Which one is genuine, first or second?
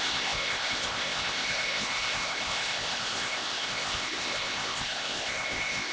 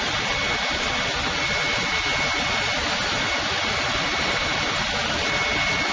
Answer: second